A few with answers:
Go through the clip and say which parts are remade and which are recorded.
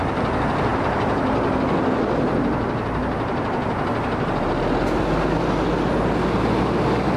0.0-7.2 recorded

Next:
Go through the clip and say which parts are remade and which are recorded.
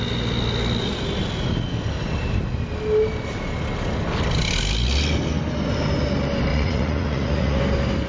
0.0-6.5 recorded; 6.5-7.6 remade; 7.6-8.1 recorded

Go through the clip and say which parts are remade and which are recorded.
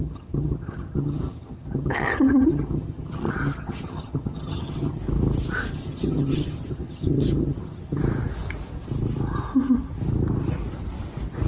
0.0-5.0 remade; 5.0-5.7 recorded; 5.7-8.0 remade; 8.0-11.5 recorded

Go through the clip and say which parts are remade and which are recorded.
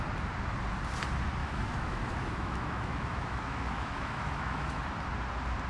0.0-1.4 recorded; 1.4-4.8 remade; 4.8-5.7 recorded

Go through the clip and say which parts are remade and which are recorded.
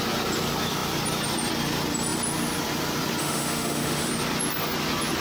0.0-3.2 recorded; 3.2-4.1 remade; 4.1-5.2 recorded